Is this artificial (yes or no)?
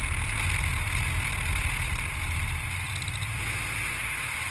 no